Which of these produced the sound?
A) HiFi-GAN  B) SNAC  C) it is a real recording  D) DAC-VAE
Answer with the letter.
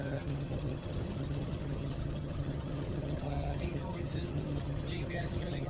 A